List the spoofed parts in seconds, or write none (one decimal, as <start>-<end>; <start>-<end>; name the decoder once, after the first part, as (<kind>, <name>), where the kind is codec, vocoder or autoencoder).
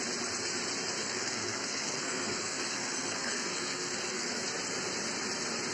1.0-4.4 (codec, SNAC)